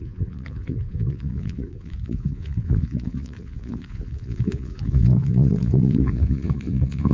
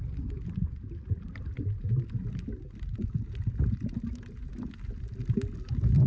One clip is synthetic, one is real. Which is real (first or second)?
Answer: second